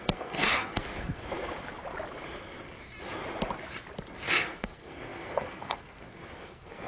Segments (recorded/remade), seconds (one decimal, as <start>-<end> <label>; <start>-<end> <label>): 0.0-1.2 remade; 1.2-4.2 recorded; 4.2-6.9 remade